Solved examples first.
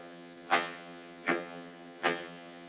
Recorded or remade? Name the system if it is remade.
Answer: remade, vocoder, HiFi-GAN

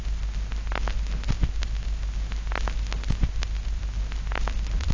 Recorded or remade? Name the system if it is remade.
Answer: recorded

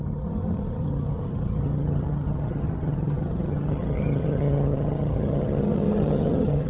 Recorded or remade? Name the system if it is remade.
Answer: remade, vocoder, HiFi-GAN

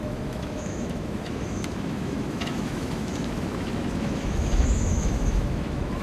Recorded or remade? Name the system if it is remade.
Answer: remade, autoencoder, DAC-VAE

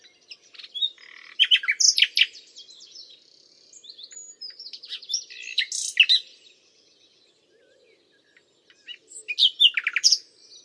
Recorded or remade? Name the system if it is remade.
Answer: recorded